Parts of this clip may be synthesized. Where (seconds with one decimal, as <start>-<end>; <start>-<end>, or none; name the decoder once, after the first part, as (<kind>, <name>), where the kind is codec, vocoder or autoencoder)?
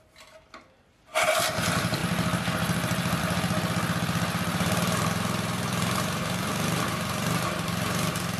4.5-8.4 (vocoder, BigVGAN v2)